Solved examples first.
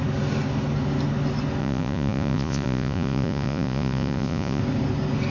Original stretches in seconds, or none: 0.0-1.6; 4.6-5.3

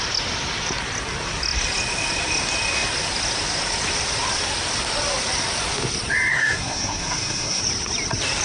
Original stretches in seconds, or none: 0.0-6.3; 7.6-8.4

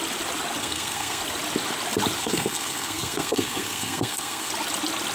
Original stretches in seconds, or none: 0.0-0.6; 1.2-2.2; 4.5-5.1

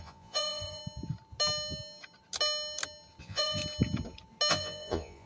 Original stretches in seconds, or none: 0.8-3.2; 3.6-4.5

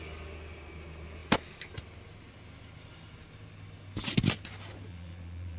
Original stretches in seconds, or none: 0.0-4.9

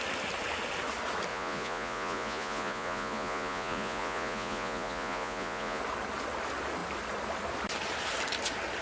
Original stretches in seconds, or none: 0.0-1.3; 5.8-8.8

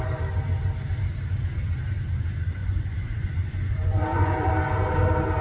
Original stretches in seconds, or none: 0.0-2.6; 4.5-5.4